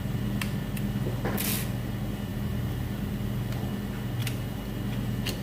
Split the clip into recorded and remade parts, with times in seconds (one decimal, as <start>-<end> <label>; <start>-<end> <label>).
0.0-2.3 recorded; 2.3-3.7 remade; 3.7-4.2 recorded; 4.2-4.8 remade; 4.8-5.4 recorded